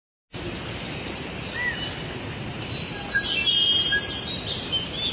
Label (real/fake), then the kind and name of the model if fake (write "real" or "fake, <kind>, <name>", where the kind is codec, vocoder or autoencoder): real